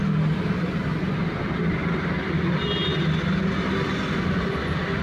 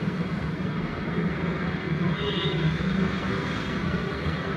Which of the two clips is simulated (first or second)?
second